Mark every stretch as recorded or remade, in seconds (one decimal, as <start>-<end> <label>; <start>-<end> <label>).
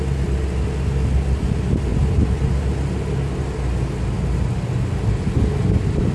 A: 0.0-6.1 recorded